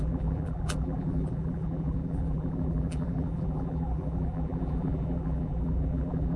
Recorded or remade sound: remade